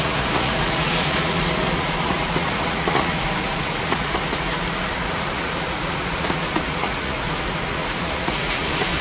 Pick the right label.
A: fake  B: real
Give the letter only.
A